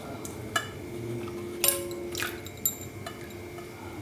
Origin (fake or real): real